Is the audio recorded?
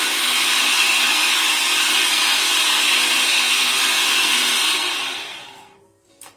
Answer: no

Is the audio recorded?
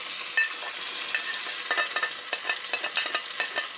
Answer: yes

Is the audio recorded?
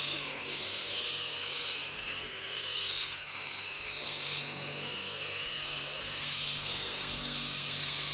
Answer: no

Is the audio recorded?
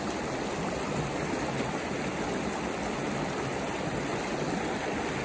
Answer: yes